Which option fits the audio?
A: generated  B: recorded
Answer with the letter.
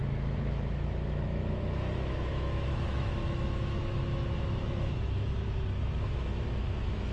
A